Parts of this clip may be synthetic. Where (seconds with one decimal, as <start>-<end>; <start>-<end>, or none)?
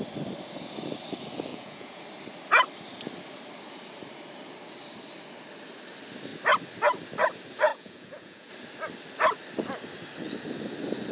1.5-2.0; 7.7-8.5